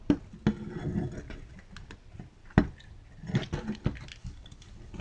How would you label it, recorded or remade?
recorded